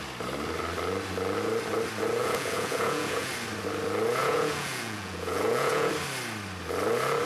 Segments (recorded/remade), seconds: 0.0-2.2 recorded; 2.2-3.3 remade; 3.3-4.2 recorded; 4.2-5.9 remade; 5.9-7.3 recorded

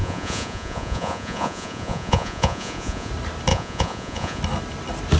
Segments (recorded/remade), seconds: 0.0-3.1 remade; 3.1-3.5 recorded; 3.5-4.4 remade; 4.4-5.2 recorded